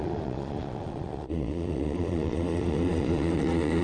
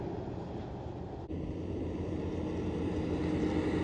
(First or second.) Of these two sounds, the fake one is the first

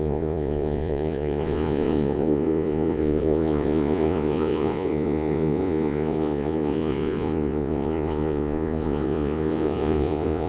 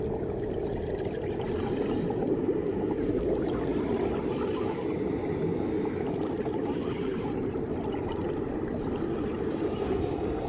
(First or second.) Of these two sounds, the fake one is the first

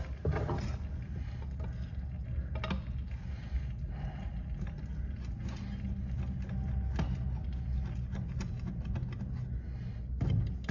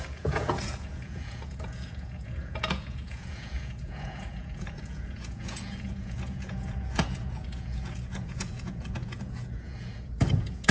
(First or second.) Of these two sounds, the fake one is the second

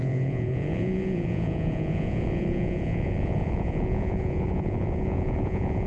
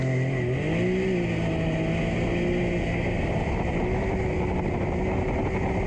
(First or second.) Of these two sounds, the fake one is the first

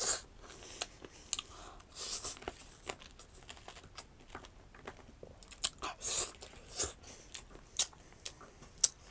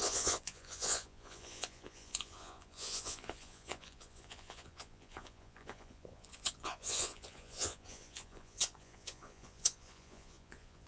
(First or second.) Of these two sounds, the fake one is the second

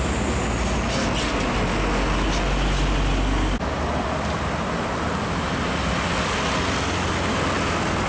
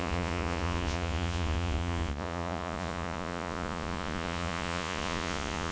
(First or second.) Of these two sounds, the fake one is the second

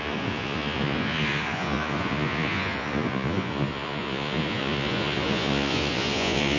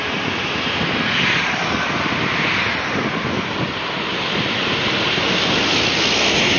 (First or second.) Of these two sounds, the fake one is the first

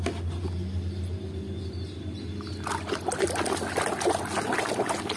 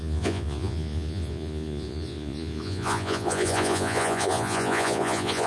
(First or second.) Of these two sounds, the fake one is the second